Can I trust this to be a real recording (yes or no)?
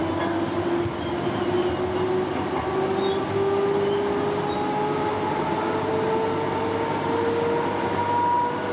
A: yes